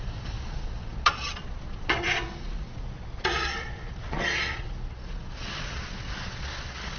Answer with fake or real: fake